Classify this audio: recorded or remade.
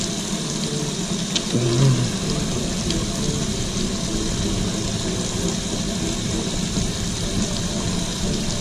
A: recorded